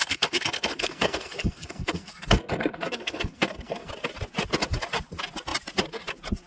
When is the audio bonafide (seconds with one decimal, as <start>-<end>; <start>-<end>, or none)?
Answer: 3.9-6.5